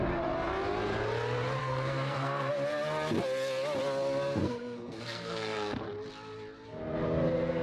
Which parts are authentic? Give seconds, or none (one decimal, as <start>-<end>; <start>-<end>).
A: 0.0-1.6; 2.5-4.4; 5.8-7.6